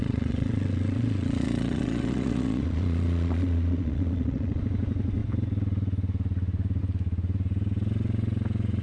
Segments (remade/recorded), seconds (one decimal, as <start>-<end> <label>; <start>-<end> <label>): 0.0-4.6 remade; 4.6-8.8 recorded